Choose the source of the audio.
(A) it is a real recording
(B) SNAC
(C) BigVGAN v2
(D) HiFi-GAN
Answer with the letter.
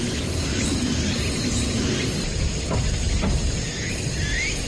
A